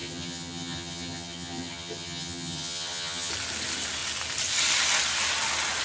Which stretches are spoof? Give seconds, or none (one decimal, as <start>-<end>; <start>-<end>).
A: 0.0-3.3